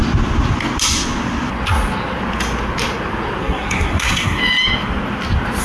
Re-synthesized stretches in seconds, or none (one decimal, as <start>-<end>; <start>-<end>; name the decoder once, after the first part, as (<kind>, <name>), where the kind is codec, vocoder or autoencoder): 3.4-4.4 (codec, SNAC)